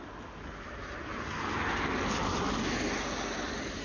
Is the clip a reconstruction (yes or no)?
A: no